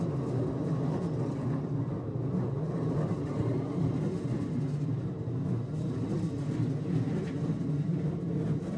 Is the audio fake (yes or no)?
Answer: no